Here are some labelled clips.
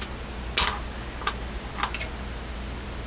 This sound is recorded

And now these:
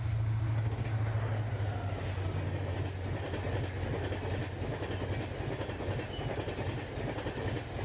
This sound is recorded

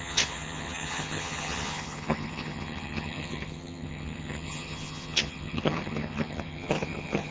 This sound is remade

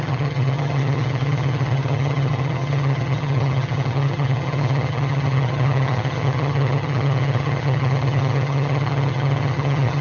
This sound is remade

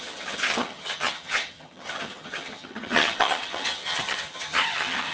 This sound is remade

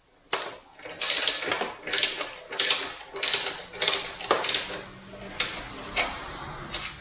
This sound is recorded